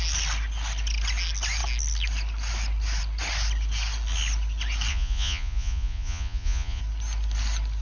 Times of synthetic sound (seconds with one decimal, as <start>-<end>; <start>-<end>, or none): 4.9-6.8